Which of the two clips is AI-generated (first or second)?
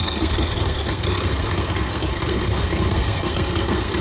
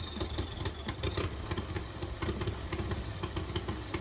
first